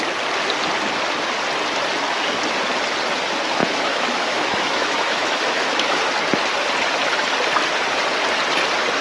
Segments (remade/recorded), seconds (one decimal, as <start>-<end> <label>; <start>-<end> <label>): 0.0-3.6 recorded; 3.6-6.0 remade; 6.0-9.0 recorded